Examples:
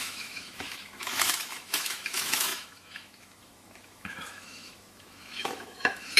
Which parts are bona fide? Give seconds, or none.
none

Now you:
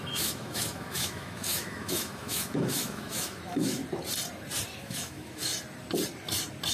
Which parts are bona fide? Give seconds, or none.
3.8-4.8; 5.5-6.7

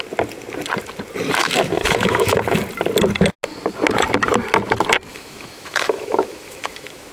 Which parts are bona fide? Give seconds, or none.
0.0-1.4; 2.6-5.1

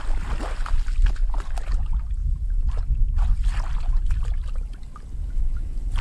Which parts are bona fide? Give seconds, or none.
0.0-6.0

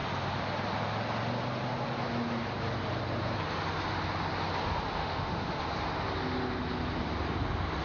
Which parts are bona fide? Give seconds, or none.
0.0-5.0; 5.6-7.8

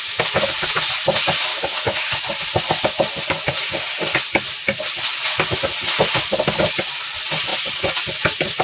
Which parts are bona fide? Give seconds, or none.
0.0-1.5; 2.2-8.6

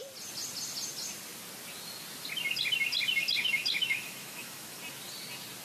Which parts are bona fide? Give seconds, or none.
0.0-3.4; 4.8-5.6